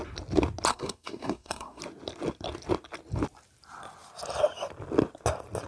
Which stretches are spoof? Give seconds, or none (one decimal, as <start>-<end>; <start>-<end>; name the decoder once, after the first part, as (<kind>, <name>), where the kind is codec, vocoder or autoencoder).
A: 0.7-1.8 (codec, SNAC)